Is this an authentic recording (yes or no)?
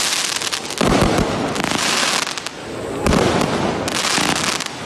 yes